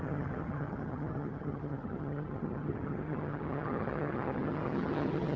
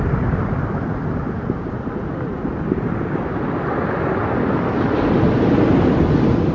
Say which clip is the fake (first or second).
first